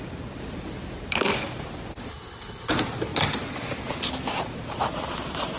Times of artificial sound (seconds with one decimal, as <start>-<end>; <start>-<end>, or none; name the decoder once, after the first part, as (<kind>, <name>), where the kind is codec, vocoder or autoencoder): 2.1-2.7 (codec, HILCodec)